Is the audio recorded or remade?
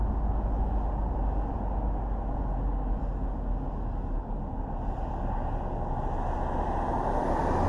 recorded